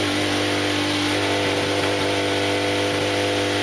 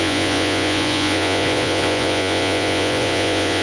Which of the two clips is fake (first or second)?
second